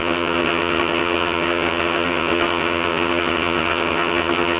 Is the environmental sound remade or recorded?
remade